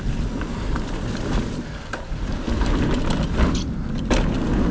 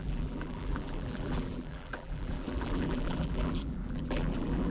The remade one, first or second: second